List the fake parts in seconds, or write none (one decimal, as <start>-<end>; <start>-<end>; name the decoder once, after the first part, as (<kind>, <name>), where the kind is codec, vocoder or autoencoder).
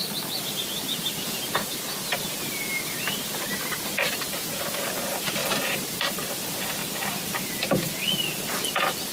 5.4-6.3 (vocoder, BigVGAN v2); 6.8-7.4